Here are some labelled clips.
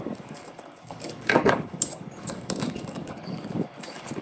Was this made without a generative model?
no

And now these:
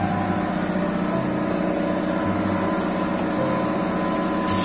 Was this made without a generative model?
yes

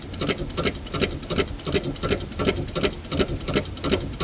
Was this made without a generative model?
yes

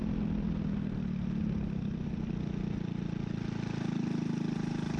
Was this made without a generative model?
yes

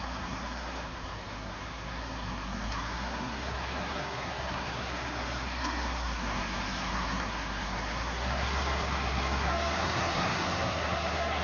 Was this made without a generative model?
no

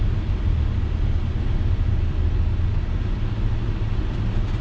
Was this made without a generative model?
yes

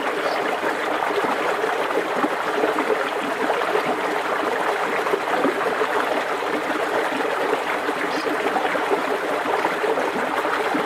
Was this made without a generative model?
yes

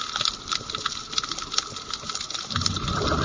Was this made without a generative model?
yes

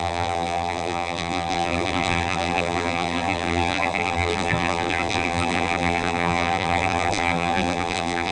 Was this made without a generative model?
no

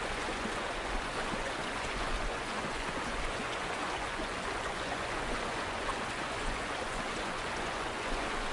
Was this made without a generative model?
no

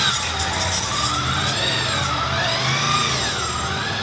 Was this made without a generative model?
yes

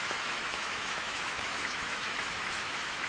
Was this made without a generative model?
no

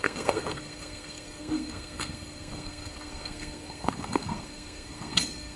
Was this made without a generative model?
no